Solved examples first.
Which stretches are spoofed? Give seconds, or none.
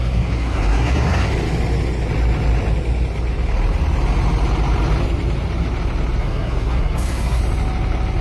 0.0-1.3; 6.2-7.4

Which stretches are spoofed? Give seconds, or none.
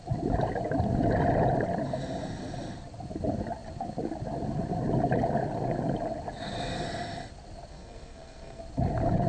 7.7-8.6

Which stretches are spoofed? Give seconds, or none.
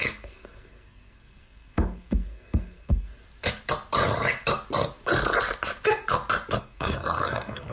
0.0-3.1; 6.6-7.7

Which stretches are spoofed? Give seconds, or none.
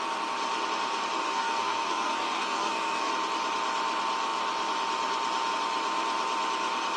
1.2-3.1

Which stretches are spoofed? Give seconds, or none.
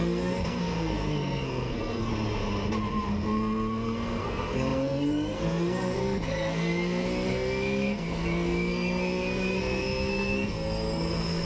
0.0-2.1; 2.9-11.5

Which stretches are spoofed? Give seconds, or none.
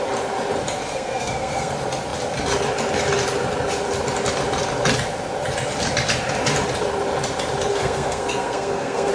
0.9-1.7; 7.7-9.1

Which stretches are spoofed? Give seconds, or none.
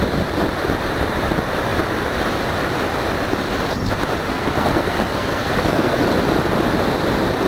4.3-6.0